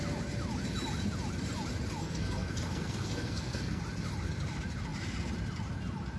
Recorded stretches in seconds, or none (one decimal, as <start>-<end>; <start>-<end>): 0.0-2.0; 3.8-6.2